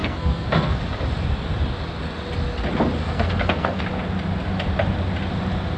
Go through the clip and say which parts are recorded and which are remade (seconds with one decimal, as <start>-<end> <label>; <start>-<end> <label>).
0.0-0.8 remade; 0.8-3.0 recorded; 3.0-3.8 remade; 3.8-5.8 recorded

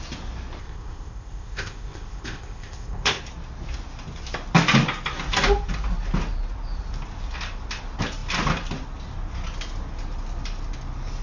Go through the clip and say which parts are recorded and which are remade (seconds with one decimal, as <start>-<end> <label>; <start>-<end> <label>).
0.0-0.6 recorded; 0.6-3.2 remade; 3.2-11.2 recorded

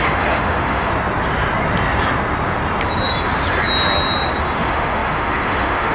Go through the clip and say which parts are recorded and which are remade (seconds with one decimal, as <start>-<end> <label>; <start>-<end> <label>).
0.0-0.9 remade; 0.9-4.4 recorded; 4.4-5.9 remade

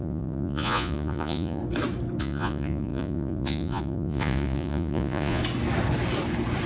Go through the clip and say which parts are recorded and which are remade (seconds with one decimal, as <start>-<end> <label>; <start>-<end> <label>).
0.0-1.6 remade; 1.6-2.2 recorded; 2.2-5.4 remade; 5.4-6.7 recorded

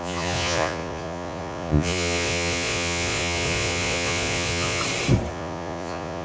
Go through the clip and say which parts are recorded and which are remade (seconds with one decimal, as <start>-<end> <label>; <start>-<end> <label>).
0.0-4.8 remade; 4.8-5.3 recorded; 5.3-6.2 remade

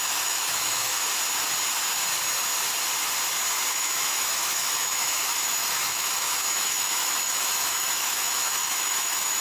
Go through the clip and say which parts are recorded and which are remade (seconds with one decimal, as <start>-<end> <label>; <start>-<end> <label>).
0.0-1.0 remade; 1.0-3.7 recorded; 3.7-9.4 remade

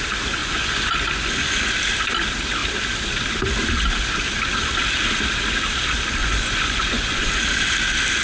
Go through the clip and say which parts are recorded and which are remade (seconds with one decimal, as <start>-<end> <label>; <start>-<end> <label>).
0.0-0.4 recorded; 0.4-1.7 remade; 1.7-6.2 recorded; 6.2-7.3 remade; 7.3-8.2 recorded